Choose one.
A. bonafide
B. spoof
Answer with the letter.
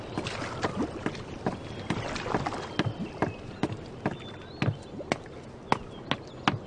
A